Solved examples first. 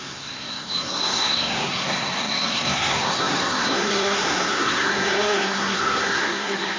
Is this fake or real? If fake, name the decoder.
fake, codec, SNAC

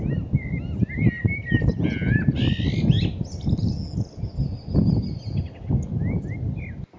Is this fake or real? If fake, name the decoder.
real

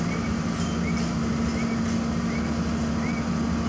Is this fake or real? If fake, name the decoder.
real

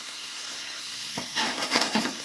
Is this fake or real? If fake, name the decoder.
fake, codec, SNAC